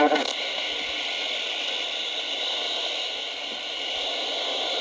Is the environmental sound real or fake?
real